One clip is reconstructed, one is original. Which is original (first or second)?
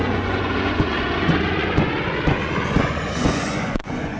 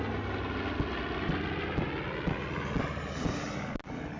second